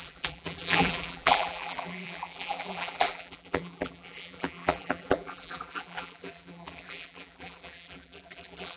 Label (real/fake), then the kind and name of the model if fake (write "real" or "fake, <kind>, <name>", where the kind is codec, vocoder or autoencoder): fake, vocoder, BigVGAN v2